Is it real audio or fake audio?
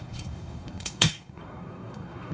fake